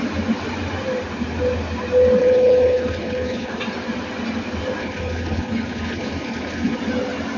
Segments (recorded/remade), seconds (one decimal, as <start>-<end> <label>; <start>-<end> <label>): 0.0-2.2 recorded; 2.2-3.5 remade; 3.5-4.8 recorded; 4.8-6.8 remade; 6.8-7.4 recorded